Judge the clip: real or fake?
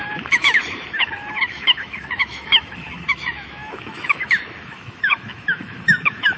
fake